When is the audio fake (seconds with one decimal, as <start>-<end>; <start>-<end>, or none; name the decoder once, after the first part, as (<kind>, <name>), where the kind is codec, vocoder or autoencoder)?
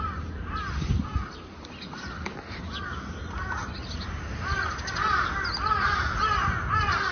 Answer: none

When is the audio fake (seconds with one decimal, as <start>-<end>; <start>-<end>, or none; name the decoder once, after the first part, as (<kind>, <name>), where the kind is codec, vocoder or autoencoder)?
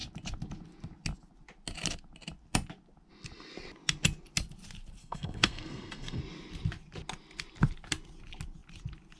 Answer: 5.0-6.2 (codec, SNAC)